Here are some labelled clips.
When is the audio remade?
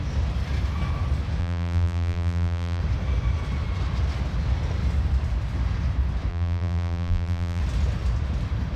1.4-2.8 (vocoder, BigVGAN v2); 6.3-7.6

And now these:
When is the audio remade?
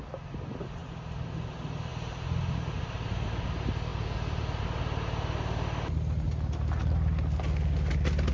none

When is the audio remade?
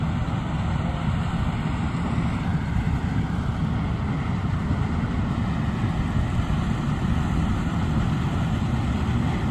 0.0-9.5 (vocoder, BigVGAN v2)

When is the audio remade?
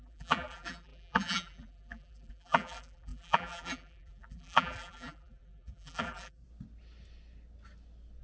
0.0-6.4 (vocoder, BigVGAN v2)